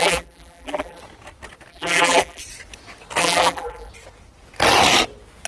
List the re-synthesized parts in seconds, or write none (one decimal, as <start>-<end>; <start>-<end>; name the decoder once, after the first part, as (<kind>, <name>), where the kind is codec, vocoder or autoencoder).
0.0-1.0 (vocoder, BigVGAN v2); 1.7-2.4; 3.2-3.9